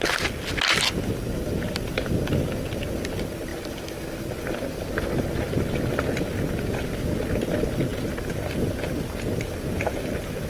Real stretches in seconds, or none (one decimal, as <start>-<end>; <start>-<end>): 0.0-3.5; 6.0-10.5